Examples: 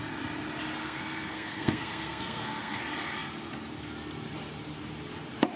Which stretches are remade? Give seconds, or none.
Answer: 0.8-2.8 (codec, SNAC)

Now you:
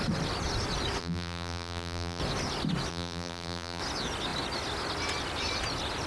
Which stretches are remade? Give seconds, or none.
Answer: 1.0-2.2 (vocoder, BigVGAN v2); 2.9-3.8

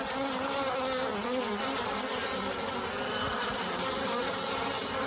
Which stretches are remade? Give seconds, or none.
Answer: none

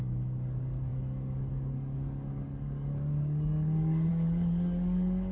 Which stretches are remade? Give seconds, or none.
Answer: 0.0-5.3 (codec, DAC)

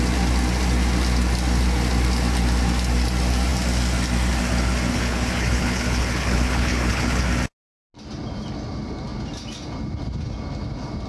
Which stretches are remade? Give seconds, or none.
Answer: 4.9-7.2 (codec, HILCodec)